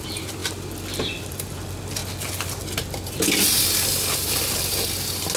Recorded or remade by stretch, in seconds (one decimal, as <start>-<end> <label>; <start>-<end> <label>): 0.0-0.4 remade; 0.4-1.0 recorded; 1.0-2.0 remade; 2.0-5.4 recorded